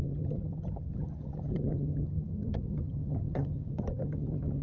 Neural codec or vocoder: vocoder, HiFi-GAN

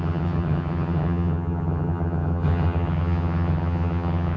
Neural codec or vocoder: vocoder, HiFi-GAN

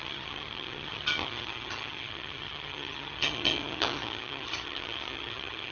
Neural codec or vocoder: vocoder, HiFi-GAN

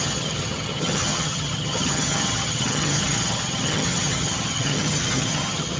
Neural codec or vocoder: vocoder, HiFi-GAN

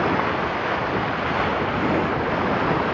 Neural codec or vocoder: none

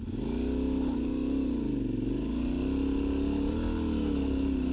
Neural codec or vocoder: none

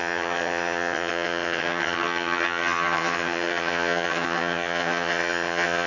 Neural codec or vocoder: vocoder, HiFi-GAN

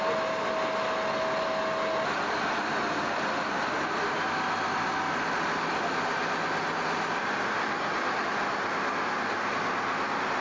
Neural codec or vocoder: none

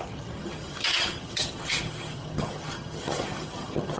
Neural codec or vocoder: vocoder, HiFi-GAN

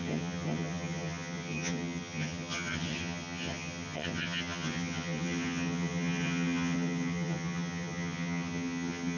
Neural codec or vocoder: vocoder, HiFi-GAN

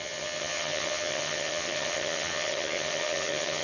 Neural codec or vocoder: vocoder, HiFi-GAN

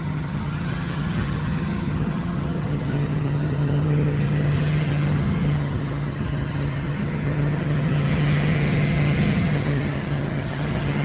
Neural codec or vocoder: vocoder, HiFi-GAN